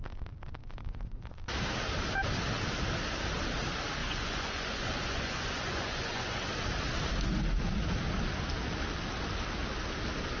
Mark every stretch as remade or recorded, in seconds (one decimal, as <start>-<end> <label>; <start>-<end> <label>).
0.0-0.6 recorded; 0.6-1.3 remade; 1.3-4.0 recorded; 4.0-6.4 remade; 6.4-10.4 recorded